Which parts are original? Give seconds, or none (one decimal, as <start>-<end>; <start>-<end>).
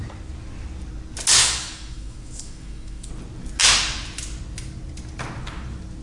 0.0-1.4; 3.1-6.0